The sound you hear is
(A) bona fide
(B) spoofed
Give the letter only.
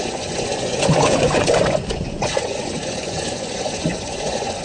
B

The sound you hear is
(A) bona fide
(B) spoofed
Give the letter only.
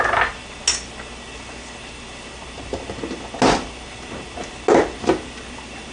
A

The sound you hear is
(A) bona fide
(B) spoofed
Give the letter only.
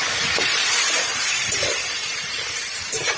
B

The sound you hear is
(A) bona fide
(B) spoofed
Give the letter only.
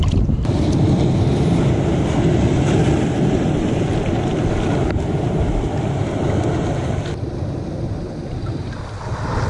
A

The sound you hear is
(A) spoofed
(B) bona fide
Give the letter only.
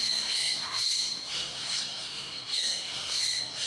A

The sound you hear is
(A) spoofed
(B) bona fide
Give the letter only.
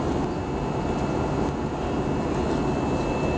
B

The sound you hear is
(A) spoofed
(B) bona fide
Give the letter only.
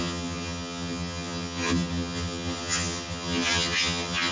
A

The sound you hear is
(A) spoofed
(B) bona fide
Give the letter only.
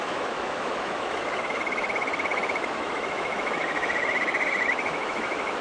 A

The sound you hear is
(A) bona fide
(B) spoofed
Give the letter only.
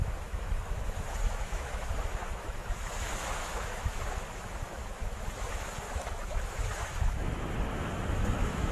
B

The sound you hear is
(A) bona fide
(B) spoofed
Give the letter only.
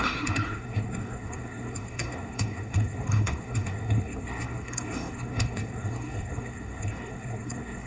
B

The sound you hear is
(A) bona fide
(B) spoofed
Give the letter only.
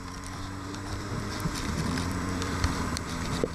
B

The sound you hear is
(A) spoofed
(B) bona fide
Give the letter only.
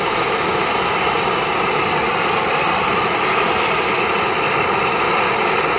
B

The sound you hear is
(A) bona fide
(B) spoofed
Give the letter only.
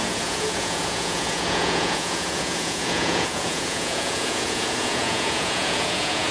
B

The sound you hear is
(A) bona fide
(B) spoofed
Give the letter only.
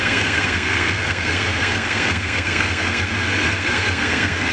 B